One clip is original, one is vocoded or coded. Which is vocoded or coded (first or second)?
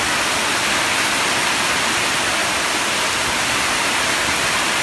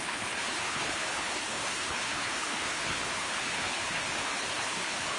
second